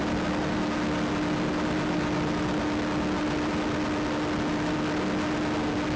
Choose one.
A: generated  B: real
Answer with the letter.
B